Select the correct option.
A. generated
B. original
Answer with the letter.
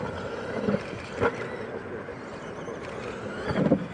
B